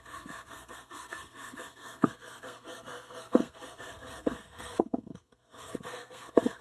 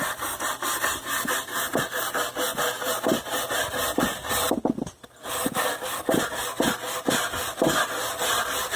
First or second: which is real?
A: second